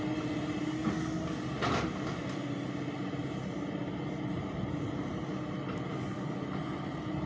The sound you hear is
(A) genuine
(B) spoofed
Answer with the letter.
A